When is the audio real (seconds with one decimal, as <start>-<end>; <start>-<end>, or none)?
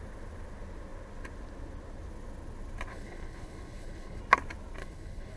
0.0-2.9; 4.2-4.8